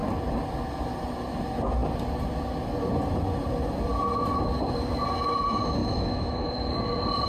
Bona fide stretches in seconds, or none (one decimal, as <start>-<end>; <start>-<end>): 0.0-5.8; 6.5-7.3